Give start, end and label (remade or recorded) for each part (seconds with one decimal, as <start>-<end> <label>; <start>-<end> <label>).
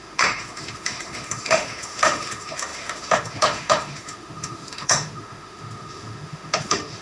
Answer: 0.0-7.0 remade